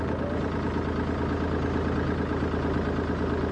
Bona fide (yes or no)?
yes